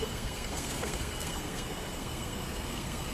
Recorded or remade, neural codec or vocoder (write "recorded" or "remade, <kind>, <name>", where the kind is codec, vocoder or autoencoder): remade, codec, SNAC